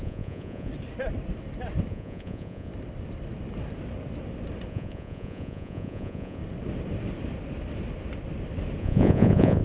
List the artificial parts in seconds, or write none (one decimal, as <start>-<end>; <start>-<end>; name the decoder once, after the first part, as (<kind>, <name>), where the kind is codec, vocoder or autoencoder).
0.0-0.7 (vocoder, Vocos); 1.9-2.7; 4.7-6.4; 8.8-9.6